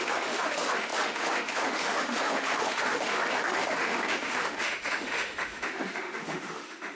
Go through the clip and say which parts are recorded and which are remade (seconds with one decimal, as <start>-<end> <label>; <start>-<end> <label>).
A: 0.0-7.0 remade